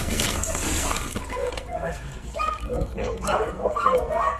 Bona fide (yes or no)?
no